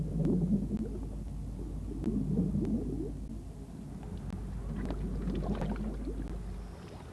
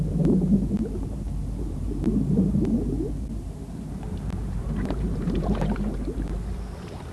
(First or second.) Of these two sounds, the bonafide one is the first